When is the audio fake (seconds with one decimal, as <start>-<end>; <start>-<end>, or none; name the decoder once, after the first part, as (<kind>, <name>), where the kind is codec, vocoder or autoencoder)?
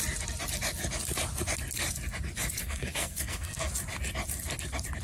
2.6-3.7 (codec, SNAC)